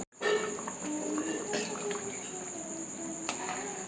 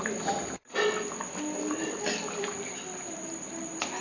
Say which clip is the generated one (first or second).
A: second